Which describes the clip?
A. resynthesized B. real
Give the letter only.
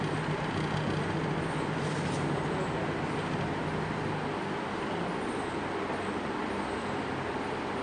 B